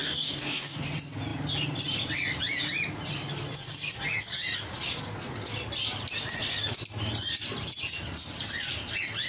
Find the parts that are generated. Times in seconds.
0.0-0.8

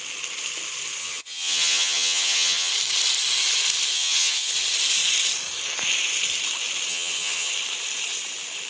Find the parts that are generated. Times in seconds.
1.0-2.7; 3.9-4.5; 6.9-7.5

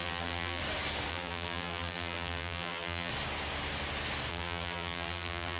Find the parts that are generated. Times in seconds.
0.0-0.6; 1.1-3.1; 4.3-5.6

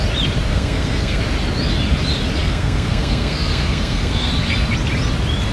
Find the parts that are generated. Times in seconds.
0.5-1.2; 2.4-4.3

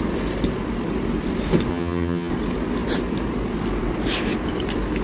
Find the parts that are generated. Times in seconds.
1.7-2.3

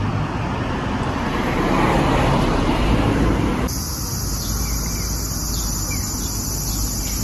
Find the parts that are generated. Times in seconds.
none